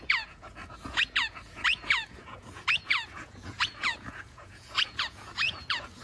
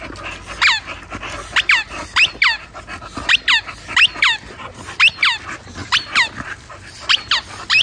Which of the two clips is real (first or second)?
second